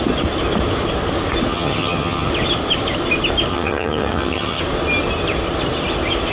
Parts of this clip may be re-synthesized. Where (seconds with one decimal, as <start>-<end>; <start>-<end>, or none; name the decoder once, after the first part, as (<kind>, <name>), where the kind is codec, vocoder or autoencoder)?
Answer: 1.5-2.3 (vocoder, HiFi-GAN); 3.5-4.6